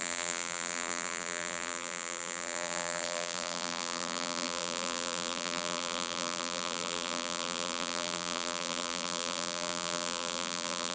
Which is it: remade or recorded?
remade